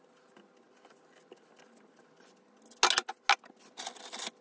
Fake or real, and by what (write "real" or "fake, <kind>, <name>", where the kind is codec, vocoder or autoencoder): real